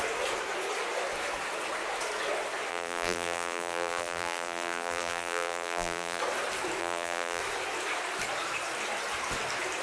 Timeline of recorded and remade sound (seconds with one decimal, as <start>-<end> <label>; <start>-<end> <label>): 0.0-2.7 recorded; 2.7-6.2 remade; 6.2-6.8 recorded; 6.8-7.4 remade; 7.4-9.8 recorded